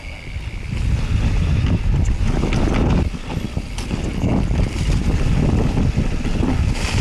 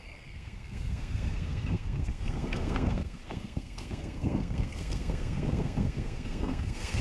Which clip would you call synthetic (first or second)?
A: second